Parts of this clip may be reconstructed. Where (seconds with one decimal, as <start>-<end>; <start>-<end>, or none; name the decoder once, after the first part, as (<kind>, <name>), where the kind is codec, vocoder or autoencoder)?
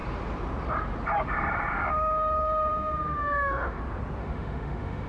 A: 1.7-3.8 (autoencoder, DAC-VAE); 4.2-5.1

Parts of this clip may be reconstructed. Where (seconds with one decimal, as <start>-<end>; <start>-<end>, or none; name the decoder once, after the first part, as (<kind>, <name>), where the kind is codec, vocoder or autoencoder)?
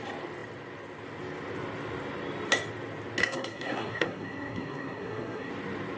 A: 3.2-5.5 (codec, SNAC)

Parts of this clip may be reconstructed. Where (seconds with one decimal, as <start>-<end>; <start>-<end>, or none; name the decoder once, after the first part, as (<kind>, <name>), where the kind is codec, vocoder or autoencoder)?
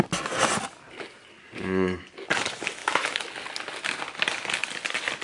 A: 2.8-3.3 (autoencoder, DAC-VAE)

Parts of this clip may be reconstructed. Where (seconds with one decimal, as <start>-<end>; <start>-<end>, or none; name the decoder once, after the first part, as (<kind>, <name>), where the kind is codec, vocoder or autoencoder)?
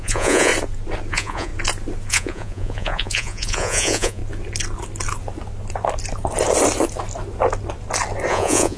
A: 0.0-0.5 (vocoder, Vocos); 1.1-1.5; 2.1-4.2; 8.3-8.8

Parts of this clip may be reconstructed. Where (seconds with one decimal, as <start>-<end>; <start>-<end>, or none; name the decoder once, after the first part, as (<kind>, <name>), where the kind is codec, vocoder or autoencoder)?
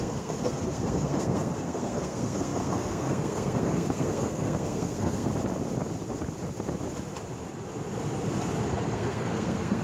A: 0.0-5.3 (codec, SNAC); 8.9-9.8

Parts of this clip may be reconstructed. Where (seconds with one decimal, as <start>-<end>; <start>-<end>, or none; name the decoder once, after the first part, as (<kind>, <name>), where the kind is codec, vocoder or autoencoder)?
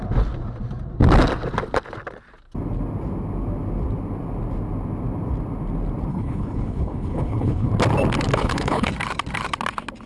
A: 6.1-7.7 (codec, HILCodec); 8.3-8.9